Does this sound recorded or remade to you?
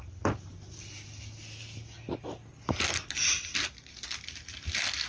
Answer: recorded